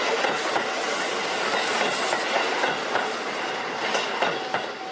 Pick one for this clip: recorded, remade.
recorded